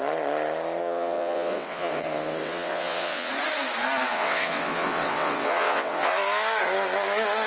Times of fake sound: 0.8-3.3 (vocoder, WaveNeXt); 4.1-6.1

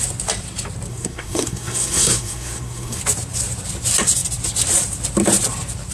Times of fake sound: 0.9-3.0 (codec, SNAC)

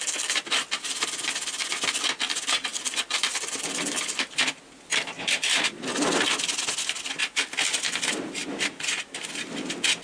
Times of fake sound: none

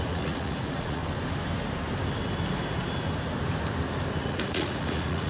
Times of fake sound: 0.0-1.0 (vocoder, Vocos); 4.2-5.3

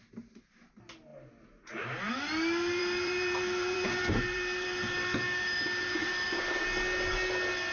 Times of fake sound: 1.1-2.1 (vocoder, BigVGAN v2); 2.8-5.6; 6.0-6.6